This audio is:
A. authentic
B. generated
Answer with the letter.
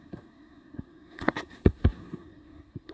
B